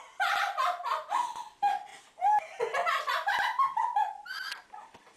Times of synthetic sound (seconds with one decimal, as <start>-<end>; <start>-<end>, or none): none